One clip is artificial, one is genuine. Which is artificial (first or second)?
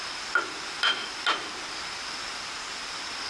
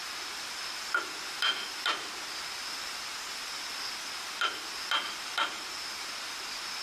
first